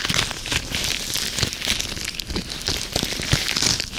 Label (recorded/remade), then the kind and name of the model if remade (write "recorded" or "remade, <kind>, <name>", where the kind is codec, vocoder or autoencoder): recorded